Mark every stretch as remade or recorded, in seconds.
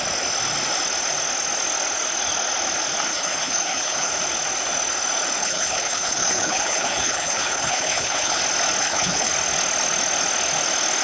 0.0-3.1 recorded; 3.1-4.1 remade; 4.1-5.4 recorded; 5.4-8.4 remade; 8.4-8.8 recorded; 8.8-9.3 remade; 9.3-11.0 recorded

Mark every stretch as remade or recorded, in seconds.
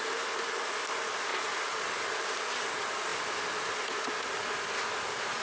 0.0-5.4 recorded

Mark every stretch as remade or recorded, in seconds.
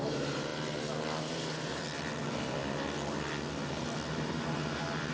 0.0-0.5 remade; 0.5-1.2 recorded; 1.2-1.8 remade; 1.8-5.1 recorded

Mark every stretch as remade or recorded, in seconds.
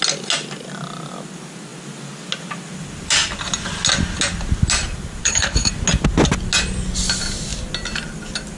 0.0-5.2 recorded; 5.2-5.7 remade; 5.7-8.6 recorded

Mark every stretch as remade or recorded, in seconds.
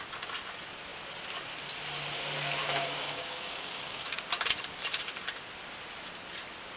0.0-2.6 recorded; 2.6-4.2 remade; 4.2-6.8 recorded